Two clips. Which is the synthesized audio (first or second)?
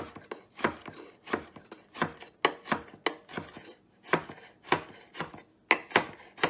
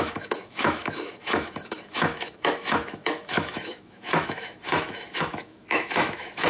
second